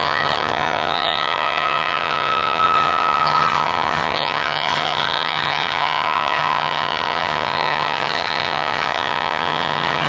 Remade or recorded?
remade